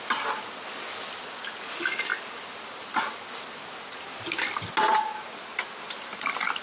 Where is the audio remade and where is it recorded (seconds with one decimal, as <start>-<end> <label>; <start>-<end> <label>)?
0.0-6.6 recorded